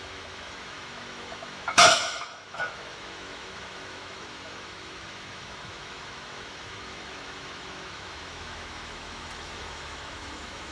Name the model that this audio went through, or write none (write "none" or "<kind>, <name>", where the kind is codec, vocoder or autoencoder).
autoencoder, DAC-VAE